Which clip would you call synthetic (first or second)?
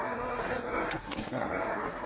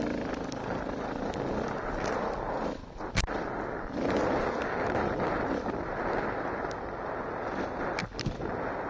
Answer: first